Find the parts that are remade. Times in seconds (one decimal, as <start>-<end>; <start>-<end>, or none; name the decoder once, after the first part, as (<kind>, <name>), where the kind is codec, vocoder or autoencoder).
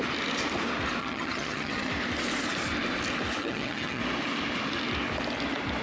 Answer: 1.0-1.9 (vocoder, HiFi-GAN); 3.4-4.0